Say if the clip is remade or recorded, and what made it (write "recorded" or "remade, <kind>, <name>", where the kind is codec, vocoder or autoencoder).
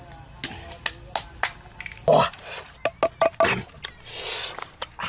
recorded